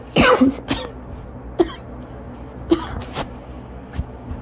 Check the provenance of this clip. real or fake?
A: real